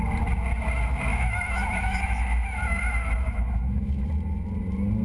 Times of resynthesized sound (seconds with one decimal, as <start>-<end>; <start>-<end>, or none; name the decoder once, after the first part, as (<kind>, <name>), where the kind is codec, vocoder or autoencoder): 1.1-4.1 (autoencoder, DAC-VAE)